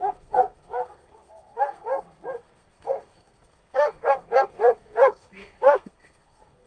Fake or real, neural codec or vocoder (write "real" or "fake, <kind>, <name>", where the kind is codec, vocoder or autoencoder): fake, codec, SNAC